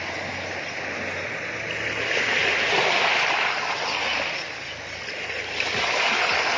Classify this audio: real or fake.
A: real